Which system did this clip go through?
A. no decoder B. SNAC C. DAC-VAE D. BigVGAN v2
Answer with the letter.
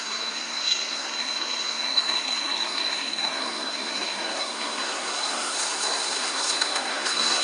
B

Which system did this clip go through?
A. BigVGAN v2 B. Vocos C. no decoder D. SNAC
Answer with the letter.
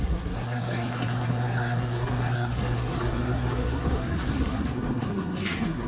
D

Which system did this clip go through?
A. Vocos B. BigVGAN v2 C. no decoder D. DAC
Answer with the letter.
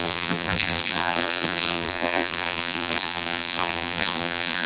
B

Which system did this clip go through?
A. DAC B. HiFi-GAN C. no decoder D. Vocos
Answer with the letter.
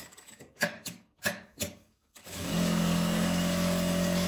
A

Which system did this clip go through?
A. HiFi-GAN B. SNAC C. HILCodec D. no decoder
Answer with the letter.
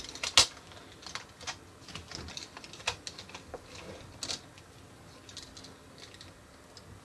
D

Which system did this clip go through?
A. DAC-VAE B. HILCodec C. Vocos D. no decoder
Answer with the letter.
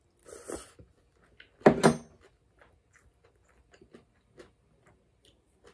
D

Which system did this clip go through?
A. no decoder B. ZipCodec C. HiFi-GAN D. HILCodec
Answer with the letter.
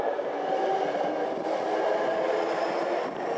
A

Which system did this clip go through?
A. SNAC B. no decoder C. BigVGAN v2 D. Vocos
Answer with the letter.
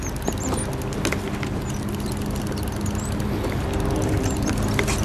B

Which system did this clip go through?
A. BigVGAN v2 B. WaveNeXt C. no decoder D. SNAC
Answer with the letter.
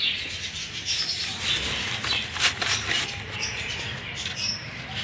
C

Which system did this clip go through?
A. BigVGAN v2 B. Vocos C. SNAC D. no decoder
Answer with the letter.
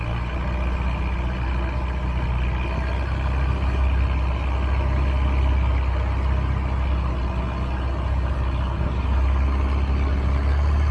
D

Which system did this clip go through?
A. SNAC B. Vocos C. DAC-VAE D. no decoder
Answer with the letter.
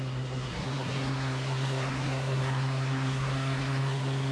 A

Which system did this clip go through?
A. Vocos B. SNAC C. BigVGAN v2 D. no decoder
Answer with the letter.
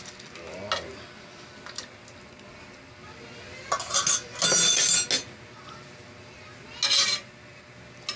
D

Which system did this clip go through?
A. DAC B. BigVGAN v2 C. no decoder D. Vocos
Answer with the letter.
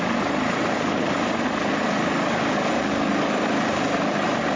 C